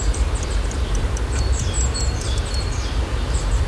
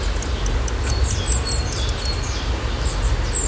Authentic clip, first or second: second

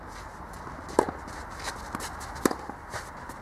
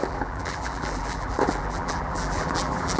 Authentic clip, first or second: first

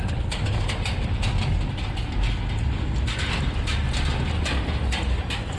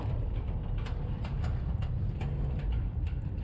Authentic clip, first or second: first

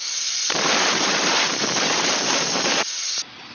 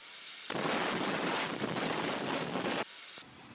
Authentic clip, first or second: second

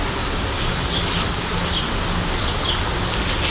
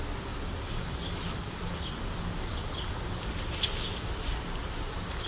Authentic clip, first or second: first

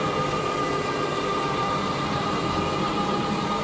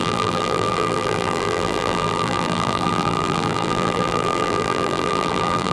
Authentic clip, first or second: first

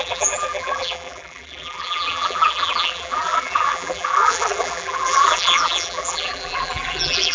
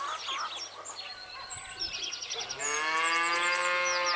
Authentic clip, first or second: second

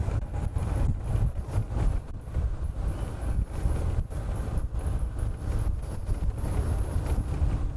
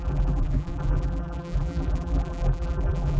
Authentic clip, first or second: first